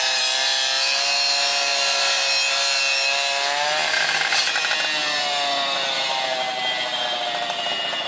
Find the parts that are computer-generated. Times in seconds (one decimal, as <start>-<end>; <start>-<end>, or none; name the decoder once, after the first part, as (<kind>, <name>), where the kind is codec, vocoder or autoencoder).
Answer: none